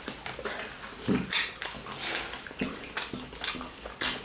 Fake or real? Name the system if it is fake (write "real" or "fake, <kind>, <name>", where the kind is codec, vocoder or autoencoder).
real